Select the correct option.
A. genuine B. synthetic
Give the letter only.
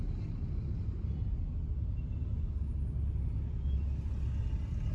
A